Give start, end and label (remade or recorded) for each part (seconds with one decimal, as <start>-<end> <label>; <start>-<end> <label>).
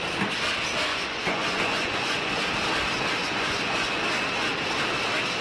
0.0-0.9 recorded; 0.9-2.4 remade; 2.4-3.2 recorded; 3.2-4.0 remade; 4.0-5.4 recorded